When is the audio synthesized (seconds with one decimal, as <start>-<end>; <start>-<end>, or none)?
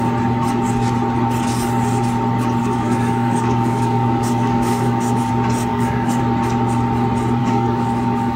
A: 2.6-5.3; 5.7-6.2; 7.4-8.4